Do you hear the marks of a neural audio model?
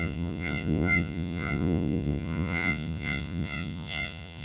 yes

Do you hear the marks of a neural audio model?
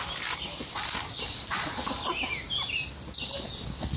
no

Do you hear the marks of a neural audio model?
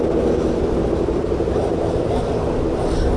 no